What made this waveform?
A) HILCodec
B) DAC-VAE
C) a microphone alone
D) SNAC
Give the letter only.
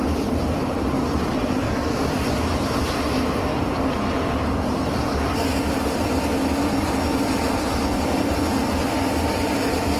C